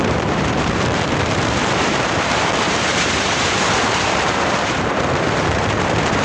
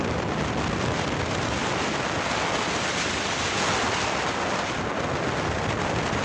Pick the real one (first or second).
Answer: second